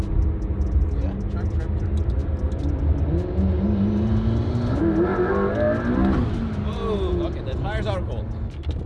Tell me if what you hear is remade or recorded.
recorded